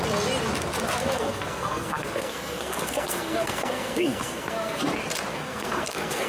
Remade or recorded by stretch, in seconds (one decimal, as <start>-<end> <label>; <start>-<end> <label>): 0.0-1.0 recorded; 1.0-4.8 remade; 4.8-5.3 recorded; 5.3-6.3 remade